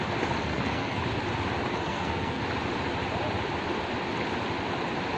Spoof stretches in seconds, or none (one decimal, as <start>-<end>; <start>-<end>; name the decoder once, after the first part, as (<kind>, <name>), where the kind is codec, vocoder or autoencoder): 0.5-1.0 (codec, SNAC); 1.7-2.4